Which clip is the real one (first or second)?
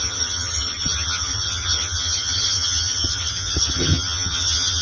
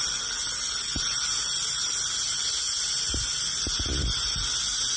second